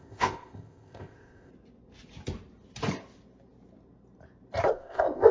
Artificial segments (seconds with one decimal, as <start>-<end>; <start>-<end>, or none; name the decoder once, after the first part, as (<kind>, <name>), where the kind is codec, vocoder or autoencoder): 0.0-1.5 (codec, ZipCodec); 4.7-5.3